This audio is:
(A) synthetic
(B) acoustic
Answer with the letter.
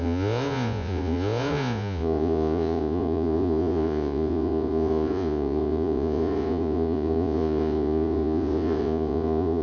A